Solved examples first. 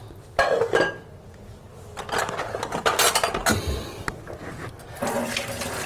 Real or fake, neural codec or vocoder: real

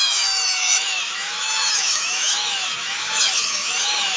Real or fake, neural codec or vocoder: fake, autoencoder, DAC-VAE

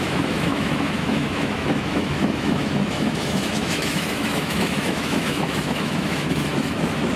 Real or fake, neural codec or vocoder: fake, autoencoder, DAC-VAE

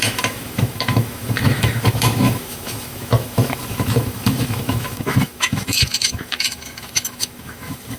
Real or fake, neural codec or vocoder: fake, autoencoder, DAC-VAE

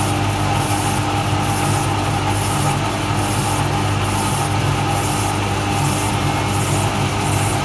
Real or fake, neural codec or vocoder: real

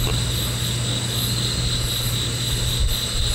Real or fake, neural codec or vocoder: real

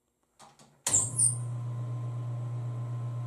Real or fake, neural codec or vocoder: real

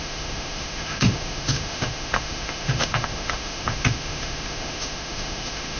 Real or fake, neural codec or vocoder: fake, autoencoder, DAC-VAE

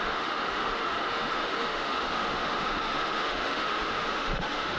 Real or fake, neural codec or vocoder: fake, autoencoder, DAC-VAE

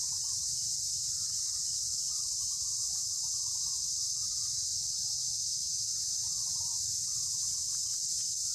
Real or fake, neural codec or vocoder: real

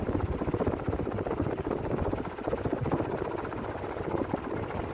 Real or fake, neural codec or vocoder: real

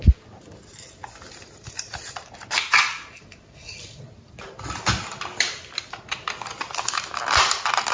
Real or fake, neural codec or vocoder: real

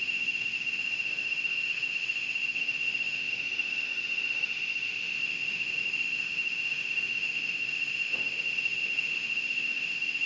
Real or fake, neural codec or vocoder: fake, autoencoder, DAC-VAE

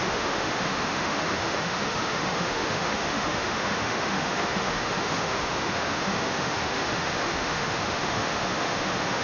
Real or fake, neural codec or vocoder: fake, autoencoder, DAC-VAE